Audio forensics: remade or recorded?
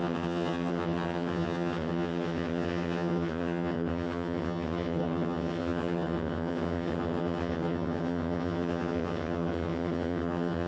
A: remade